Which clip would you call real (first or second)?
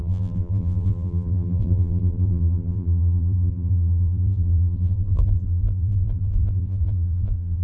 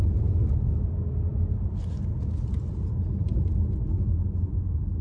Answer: second